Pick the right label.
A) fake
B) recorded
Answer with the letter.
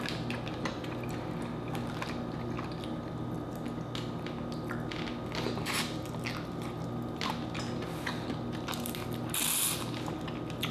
B